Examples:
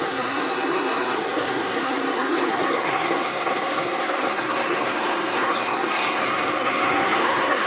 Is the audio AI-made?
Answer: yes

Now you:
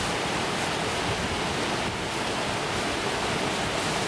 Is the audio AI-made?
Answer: no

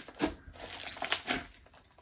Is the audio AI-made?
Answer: no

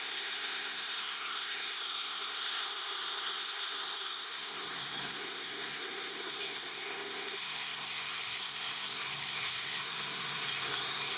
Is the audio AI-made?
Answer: yes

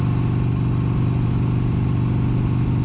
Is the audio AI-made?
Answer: no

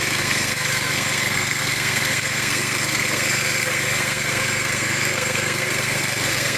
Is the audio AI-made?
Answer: yes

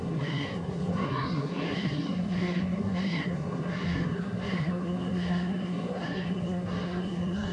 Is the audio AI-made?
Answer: yes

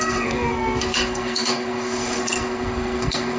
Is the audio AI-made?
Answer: yes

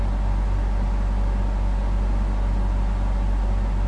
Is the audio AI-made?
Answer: no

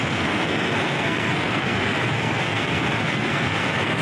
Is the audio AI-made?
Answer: yes